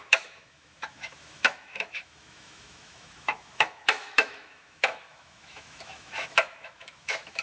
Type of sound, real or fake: fake